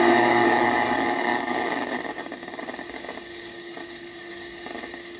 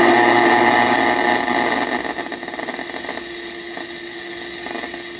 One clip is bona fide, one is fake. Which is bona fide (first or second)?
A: second